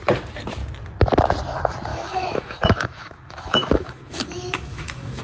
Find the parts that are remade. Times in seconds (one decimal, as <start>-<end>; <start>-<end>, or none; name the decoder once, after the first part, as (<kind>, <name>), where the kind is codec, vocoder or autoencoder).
1.9-5.2 (autoencoder, DAC-VAE)